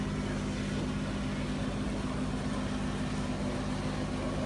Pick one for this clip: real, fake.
real